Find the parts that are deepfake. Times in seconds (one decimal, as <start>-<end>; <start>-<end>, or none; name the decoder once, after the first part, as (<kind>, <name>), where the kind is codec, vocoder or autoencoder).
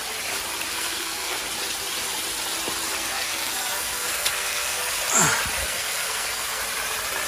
0.7-1.4 (codec, SNAC); 2.9-5.0; 5.6-6.6